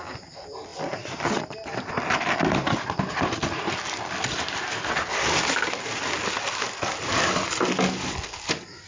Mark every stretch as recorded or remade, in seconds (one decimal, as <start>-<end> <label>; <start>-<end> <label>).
0.0-8.9 recorded